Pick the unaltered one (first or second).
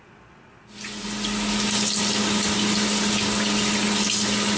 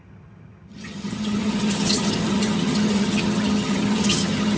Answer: first